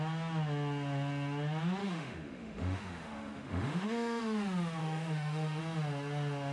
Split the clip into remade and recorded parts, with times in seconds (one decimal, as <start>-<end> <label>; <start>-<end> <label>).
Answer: 0.0-1.8 recorded; 1.8-4.2 remade; 4.2-4.8 recorded; 4.8-5.6 remade; 5.6-6.5 recorded